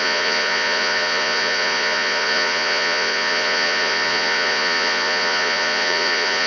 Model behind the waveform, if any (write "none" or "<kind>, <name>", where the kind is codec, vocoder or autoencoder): vocoder, Vocos